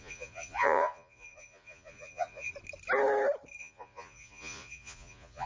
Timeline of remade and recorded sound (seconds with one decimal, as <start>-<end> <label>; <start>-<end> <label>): 0.0-2.5 remade; 2.5-3.6 recorded; 3.6-5.5 remade